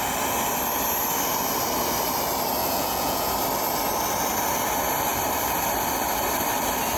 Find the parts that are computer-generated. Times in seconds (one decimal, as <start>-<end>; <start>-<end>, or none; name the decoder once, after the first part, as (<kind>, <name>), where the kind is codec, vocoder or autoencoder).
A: 2.6-3.3 (vocoder, Vocos)